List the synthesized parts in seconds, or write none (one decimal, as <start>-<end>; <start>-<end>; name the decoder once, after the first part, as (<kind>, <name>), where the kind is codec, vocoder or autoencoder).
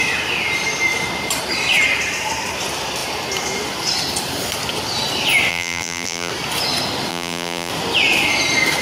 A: 5.5-6.3 (vocoder, BigVGAN v2); 7.1-7.7